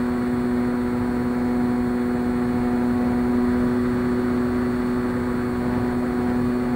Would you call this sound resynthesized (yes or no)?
no